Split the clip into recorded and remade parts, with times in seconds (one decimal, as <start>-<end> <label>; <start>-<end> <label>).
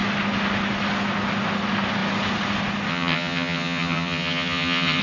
0.0-2.9 recorded; 2.9-5.0 remade